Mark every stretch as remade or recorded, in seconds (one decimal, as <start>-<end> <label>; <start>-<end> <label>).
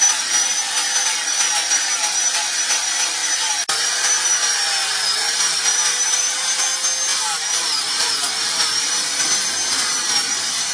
0.0-7.1 recorded; 7.1-8.9 remade; 8.9-10.7 recorded